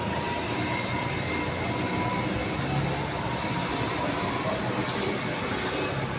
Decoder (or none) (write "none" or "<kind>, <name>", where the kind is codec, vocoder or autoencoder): none